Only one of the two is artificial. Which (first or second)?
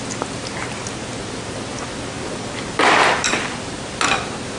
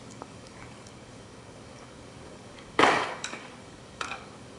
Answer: second